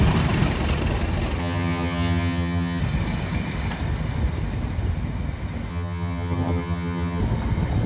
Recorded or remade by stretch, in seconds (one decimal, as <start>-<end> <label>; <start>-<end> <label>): 0.0-1.4 recorded; 1.4-2.8 remade; 2.8-5.7 recorded; 5.7-7.2 remade; 7.2-7.9 recorded

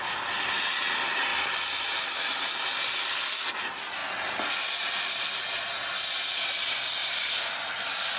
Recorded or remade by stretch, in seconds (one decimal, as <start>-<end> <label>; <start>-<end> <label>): 0.0-4.0 recorded; 4.0-4.8 remade; 4.8-7.0 recorded; 7.0-8.2 remade

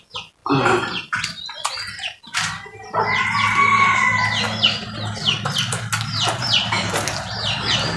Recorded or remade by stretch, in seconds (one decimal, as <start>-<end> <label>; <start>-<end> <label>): 0.0-8.0 recorded

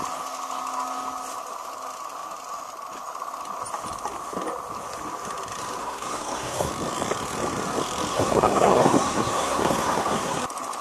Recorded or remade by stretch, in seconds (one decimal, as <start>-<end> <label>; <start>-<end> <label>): 0.0-5.8 recorded; 5.8-6.7 remade; 6.7-8.1 recorded; 8.1-10.4 remade; 10.4-10.8 recorded

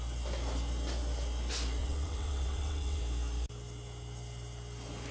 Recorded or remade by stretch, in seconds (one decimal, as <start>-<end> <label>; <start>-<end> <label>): 0.0-1.8 recorded; 1.8-3.0 remade; 3.0-5.1 recorded